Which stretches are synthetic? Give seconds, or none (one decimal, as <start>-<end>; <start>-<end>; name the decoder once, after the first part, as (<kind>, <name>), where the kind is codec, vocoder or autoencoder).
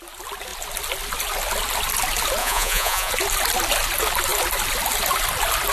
2.4-3.1 (vocoder, Vocos)